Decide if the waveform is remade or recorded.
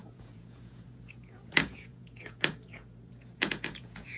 remade